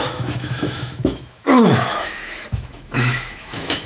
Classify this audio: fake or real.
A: fake